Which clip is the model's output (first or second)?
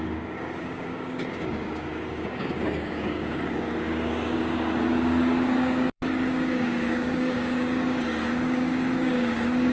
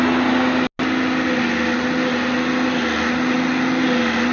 first